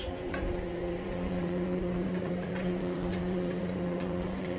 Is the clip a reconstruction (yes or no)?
yes